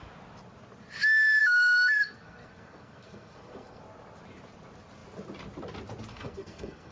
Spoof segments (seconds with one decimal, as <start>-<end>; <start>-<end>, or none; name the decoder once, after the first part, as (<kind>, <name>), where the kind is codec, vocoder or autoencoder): 1.4-3.8 (codec, SNAC); 6.1-6.9